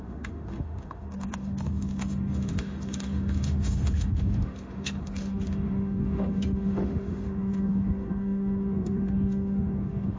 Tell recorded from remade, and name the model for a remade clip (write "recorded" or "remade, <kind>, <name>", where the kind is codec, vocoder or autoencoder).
remade, autoencoder, DAC-VAE